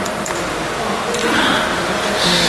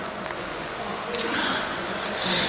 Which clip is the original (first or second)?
first